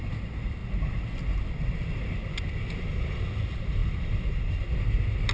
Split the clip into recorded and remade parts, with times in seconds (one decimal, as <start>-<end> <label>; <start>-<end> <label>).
0.0-5.3 recorded